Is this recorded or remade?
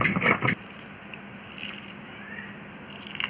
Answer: recorded